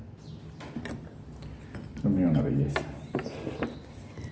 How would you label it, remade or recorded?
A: recorded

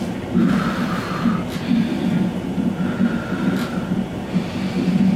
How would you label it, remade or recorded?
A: recorded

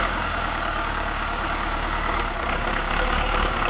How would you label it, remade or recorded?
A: remade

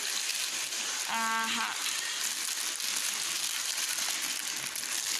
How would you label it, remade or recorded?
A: recorded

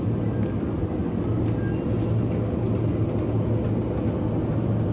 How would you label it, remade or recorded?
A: recorded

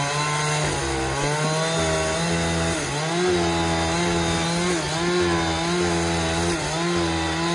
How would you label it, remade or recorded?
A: recorded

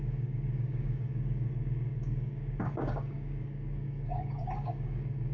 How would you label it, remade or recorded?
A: remade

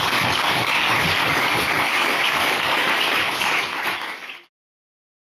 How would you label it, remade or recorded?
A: remade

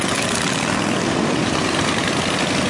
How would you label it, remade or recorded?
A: recorded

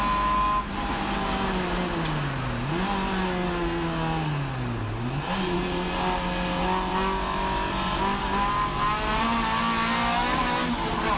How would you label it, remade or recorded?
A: recorded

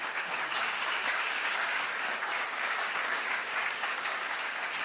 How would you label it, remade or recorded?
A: remade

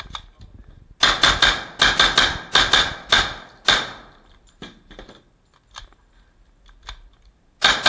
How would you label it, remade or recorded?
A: recorded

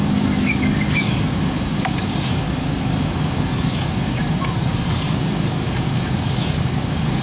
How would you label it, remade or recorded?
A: remade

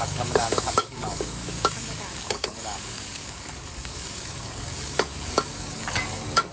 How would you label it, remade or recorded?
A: remade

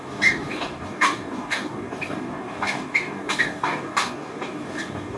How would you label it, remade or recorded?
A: remade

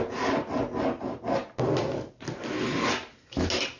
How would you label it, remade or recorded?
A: recorded